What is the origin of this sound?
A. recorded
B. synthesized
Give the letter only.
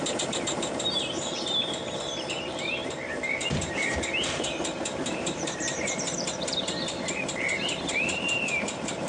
B